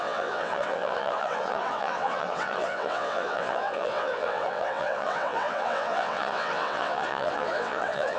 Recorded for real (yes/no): no